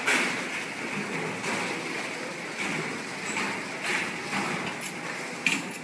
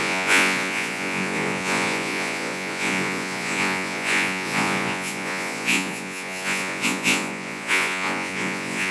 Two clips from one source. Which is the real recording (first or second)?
first